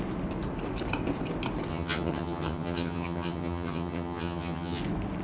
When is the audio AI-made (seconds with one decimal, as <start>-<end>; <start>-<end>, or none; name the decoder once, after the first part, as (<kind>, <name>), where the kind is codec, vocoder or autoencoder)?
1.7-4.8 (vocoder, HiFi-GAN)